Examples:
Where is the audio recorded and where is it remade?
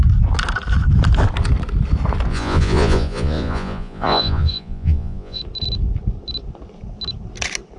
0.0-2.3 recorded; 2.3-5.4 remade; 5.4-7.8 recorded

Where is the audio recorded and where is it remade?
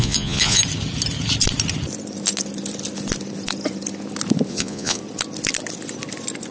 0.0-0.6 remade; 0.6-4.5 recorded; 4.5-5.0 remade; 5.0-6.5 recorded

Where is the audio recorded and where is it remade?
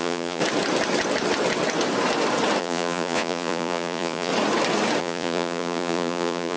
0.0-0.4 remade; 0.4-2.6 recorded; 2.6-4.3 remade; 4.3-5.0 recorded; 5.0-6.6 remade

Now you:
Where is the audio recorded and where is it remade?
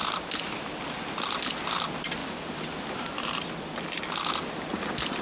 0.0-5.2 recorded